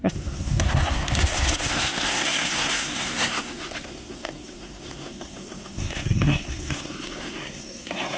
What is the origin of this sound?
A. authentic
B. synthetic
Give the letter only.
B